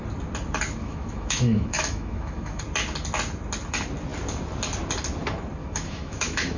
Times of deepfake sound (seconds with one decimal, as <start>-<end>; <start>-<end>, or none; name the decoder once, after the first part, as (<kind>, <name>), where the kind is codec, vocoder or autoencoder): 0.8-2.6 (autoencoder, DAC-VAE); 5.6-6.6